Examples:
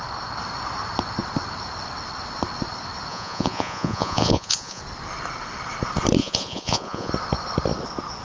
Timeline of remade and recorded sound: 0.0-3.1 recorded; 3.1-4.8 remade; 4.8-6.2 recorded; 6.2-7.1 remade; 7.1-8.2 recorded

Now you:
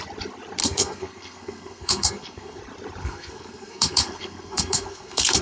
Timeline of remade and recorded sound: 0.0-0.6 recorded; 0.6-2.6 remade; 2.6-3.0 recorded; 3.0-5.4 remade

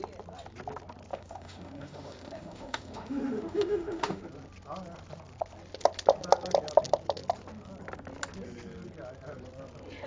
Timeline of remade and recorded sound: 0.0-1.1 recorded; 1.1-4.2 remade; 4.2-10.1 recorded